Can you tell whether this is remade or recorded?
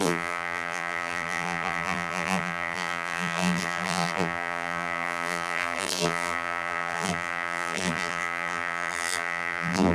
remade